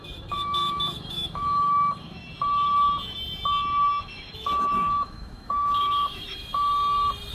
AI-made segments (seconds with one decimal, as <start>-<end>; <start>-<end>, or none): 0.0-2.2; 4.0-6.5